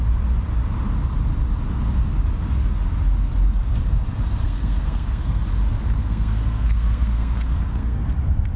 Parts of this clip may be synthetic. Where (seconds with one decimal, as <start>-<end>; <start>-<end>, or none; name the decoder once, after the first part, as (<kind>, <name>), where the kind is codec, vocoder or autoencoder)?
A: 4.4-5.4 (codec, SNAC); 6.0-8.0